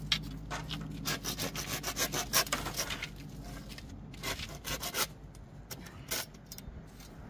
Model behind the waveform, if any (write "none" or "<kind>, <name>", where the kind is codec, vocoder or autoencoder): none